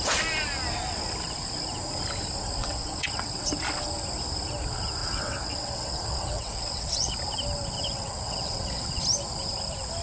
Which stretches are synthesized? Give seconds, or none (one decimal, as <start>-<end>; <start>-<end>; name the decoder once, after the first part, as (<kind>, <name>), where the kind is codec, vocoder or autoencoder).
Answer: 2.6-3.5 (vocoder, WaveNeXt); 5.0-7.1; 7.8-9.0